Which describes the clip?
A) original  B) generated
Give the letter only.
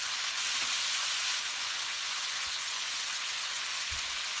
B